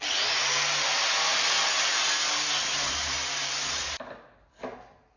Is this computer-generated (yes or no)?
no